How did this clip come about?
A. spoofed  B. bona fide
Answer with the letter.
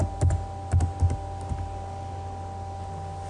B